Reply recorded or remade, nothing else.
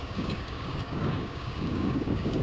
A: remade